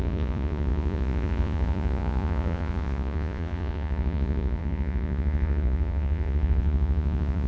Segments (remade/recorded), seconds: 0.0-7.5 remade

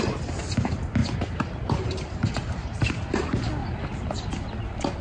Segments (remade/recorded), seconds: 0.0-1.0 recorded; 1.0-2.9 remade; 2.9-3.6 recorded; 3.6-4.3 remade; 4.3-5.0 recorded

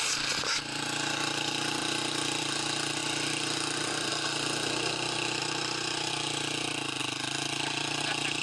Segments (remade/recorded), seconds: 0.0-5.4 recorded; 5.4-6.1 remade; 6.1-8.4 recorded

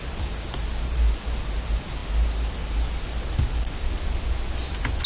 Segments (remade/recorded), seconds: 0.0-5.1 recorded

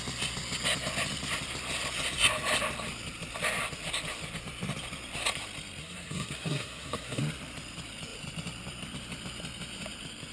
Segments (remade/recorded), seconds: 0.0-5.8 recorded; 5.8-7.2 remade; 7.2-10.3 recorded

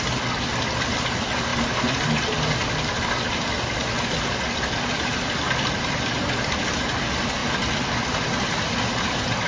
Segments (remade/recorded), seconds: 0.0-9.5 recorded

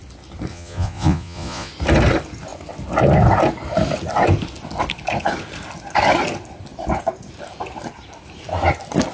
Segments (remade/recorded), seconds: 0.0-0.5 recorded; 0.5-1.7 remade; 1.7-9.1 recorded